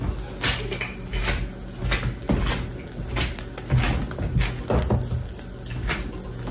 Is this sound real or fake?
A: real